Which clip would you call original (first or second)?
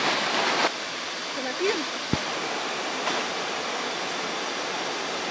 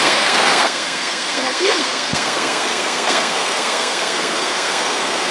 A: first